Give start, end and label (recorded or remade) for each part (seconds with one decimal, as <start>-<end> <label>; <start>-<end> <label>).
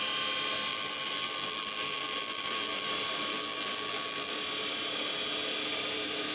0.0-0.7 recorded; 0.7-2.9 remade; 2.9-3.3 recorded; 3.3-4.3 remade; 4.3-6.3 recorded